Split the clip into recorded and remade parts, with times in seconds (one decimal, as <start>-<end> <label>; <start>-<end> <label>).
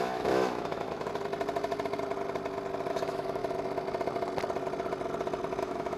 0.0-1.1 remade; 1.1-2.9 recorded; 2.9-3.4 remade; 3.4-5.6 recorded; 5.6-6.0 remade